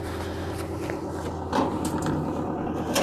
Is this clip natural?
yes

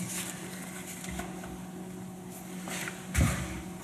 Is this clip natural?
yes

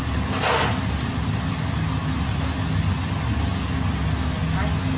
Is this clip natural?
yes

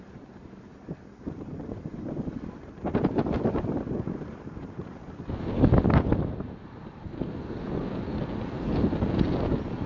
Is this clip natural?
yes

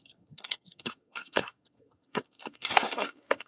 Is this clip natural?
no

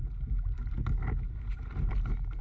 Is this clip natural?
yes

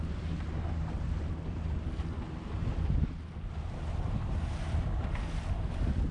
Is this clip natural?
yes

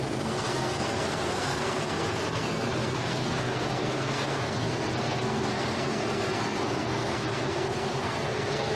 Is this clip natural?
no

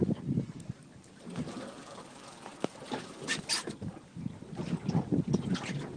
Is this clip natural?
yes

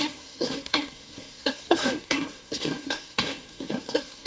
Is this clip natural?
no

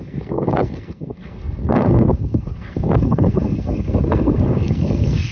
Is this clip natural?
no